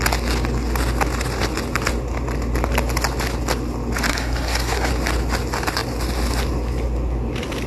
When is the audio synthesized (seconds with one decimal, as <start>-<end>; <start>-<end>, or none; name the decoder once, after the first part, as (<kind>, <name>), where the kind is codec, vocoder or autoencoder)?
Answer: 4.1-4.9 (codec, SNAC)